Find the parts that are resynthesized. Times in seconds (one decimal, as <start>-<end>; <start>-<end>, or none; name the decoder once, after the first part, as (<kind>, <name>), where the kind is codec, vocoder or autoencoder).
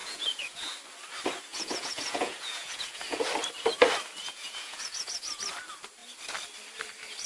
0.0-0.7 (vocoder, Vocos); 1.5-3.2; 4.2-5.4